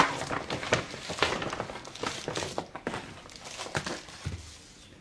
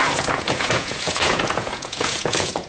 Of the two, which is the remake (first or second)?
second